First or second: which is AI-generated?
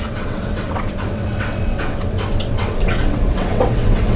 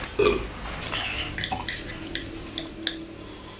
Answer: first